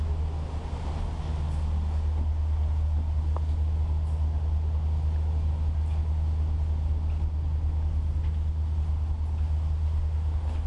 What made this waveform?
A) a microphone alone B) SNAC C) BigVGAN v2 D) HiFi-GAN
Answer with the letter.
A